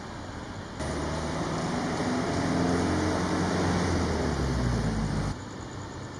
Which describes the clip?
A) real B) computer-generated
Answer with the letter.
A